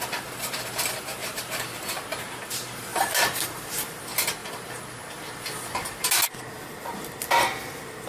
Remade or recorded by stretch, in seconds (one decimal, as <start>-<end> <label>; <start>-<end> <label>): 0.0-1.2 recorded; 1.2-1.7 remade; 1.7-2.9 recorded; 2.9-4.0 remade; 4.0-8.1 recorded